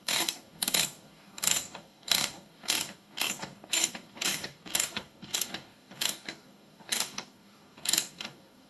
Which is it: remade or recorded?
remade